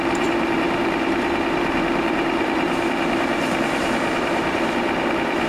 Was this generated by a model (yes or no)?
yes